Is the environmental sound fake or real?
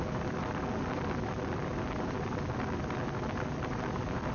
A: real